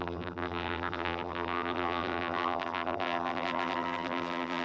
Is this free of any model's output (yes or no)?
no